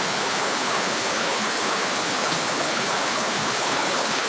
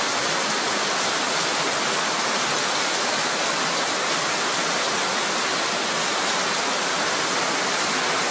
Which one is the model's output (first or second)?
first